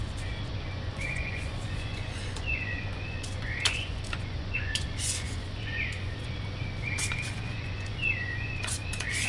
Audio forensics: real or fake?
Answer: fake